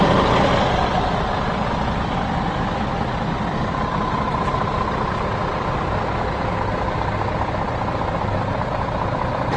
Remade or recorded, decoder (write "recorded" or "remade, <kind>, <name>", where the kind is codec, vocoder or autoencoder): recorded